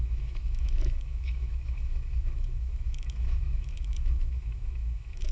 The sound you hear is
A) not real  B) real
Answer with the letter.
A